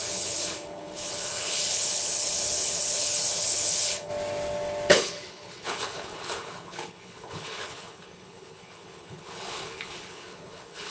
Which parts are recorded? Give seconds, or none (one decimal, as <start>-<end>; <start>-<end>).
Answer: 4.1-4.9